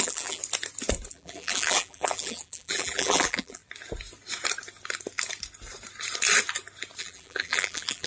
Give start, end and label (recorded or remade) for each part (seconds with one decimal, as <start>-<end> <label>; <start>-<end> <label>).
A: 0.0-0.4 remade; 0.4-1.1 recorded; 1.1-3.6 remade; 3.6-7.0 recorded; 7.0-8.1 remade